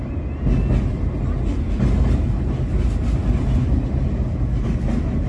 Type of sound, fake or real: real